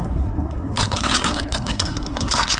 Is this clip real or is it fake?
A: fake